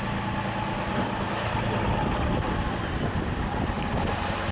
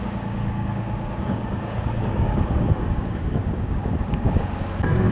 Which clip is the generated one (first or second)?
second